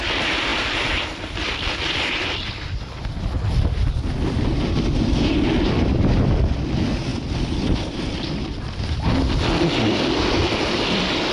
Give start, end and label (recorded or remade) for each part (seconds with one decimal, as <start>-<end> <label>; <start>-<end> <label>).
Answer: 0.0-11.3 recorded